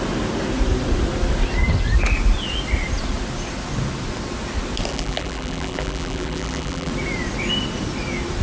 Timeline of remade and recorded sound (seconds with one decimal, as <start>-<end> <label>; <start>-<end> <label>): 0.0-4.9 recorded; 4.9-6.9 remade; 6.9-8.4 recorded